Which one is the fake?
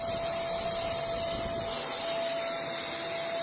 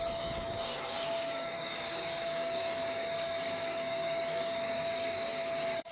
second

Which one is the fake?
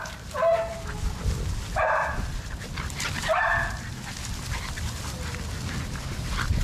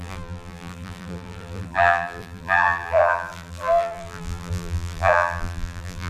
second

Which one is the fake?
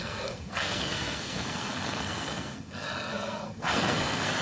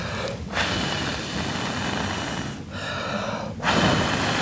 first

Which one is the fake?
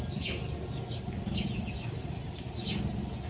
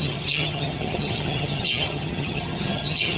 second